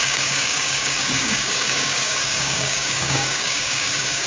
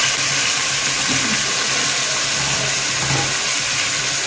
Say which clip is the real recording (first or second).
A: second